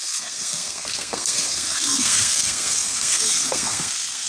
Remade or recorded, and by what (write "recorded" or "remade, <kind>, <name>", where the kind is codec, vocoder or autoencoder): remade, codec, SNAC